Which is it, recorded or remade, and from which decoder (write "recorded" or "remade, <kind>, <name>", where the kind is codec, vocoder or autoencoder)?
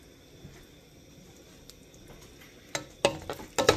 recorded